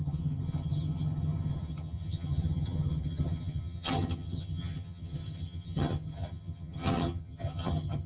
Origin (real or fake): fake